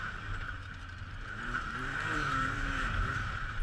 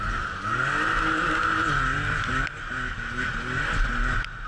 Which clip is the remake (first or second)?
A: first